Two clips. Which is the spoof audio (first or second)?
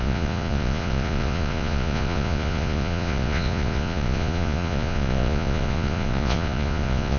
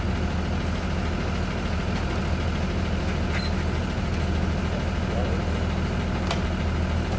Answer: first